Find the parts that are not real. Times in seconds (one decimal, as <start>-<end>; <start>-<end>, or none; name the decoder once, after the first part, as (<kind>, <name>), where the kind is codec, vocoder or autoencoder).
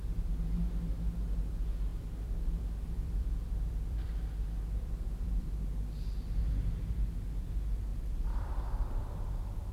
1.9-5.5 (vocoder, BigVGAN v2); 7.9-9.7